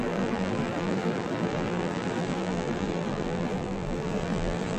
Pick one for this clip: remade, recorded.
remade